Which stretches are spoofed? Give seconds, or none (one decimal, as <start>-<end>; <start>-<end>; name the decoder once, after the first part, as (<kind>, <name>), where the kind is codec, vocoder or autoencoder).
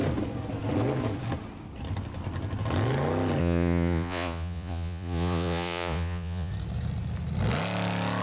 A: 3.4-6.5 (vocoder, Vocos)